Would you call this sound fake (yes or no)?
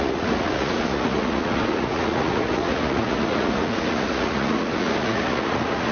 yes